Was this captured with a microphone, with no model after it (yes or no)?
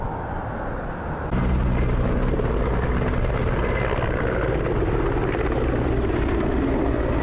yes